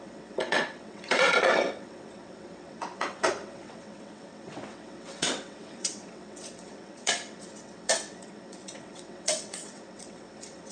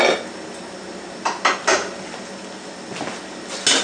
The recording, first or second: second